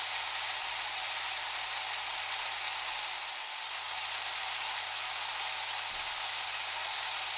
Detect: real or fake real